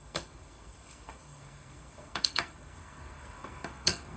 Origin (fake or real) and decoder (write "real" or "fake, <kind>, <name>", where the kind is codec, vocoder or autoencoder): fake, codec, SNAC